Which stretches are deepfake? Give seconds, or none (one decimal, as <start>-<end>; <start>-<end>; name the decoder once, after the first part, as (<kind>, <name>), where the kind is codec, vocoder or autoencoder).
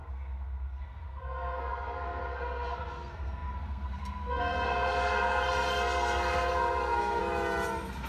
0.0-7.2 (codec, SNAC)